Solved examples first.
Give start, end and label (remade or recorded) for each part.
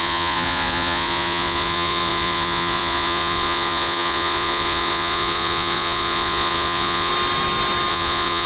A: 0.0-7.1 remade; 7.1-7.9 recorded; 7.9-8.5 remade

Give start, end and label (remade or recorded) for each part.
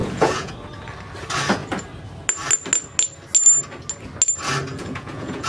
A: 0.0-0.5 remade; 0.5-4.7 recorded; 4.7-5.5 remade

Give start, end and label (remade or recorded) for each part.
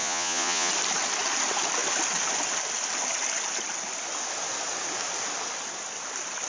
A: 0.0-0.7 remade; 0.7-6.5 recorded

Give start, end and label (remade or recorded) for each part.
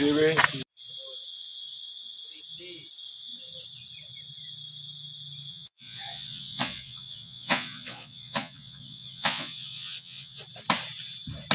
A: 0.0-5.5 recorded; 5.5-10.4 remade; 10.4-11.5 recorded